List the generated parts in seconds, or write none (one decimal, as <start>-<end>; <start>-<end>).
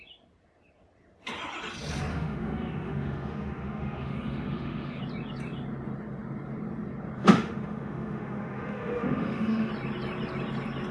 2.1-5.0; 7.2-9.7